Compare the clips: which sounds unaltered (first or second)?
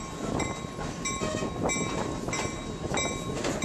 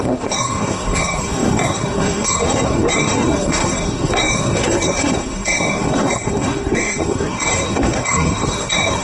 first